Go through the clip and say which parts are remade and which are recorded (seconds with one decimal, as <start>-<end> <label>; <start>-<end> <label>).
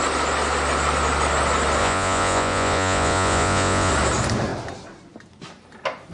0.0-1.8 recorded; 1.8-3.9 remade; 3.9-6.1 recorded